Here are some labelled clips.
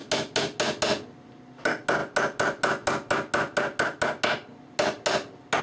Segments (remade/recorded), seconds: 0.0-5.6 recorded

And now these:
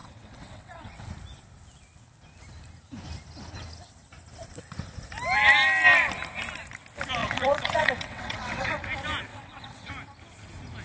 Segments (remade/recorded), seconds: 0.0-1.1 remade; 1.1-7.2 recorded; 7.2-8.8 remade; 8.8-9.3 recorded; 9.3-9.9 remade; 9.9-10.8 recorded

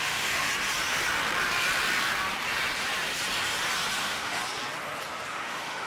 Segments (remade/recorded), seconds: 0.0-0.5 remade; 0.5-4.0 recorded; 4.0-4.4 remade; 4.4-5.3 recorded; 5.3-5.9 remade